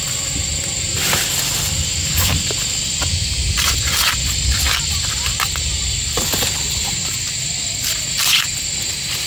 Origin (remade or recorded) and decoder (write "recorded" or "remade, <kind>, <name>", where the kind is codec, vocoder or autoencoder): recorded